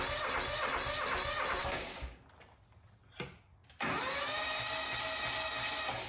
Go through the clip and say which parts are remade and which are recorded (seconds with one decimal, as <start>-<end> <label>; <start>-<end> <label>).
0.0-1.6 recorded; 1.6-2.2 remade; 2.2-6.1 recorded